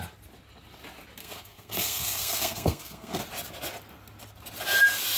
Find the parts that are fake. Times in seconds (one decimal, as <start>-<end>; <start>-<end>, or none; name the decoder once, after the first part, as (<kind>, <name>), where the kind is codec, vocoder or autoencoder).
1.2-3.2 (codec, SNAC)